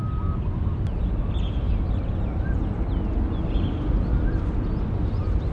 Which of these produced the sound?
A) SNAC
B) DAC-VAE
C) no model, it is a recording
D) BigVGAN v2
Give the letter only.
C